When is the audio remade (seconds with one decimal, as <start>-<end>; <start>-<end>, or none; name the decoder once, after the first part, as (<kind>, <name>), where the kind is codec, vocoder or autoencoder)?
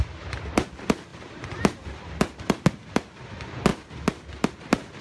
1.1-2.3 (vocoder, BigVGAN v2)